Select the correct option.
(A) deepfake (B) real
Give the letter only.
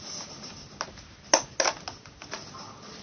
B